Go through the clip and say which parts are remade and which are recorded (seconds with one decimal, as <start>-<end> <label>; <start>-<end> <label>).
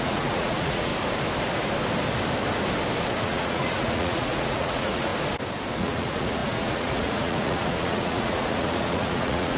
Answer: 0.0-0.9 remade; 0.9-3.2 recorded; 3.2-5.1 remade; 5.1-5.7 recorded; 5.7-9.6 remade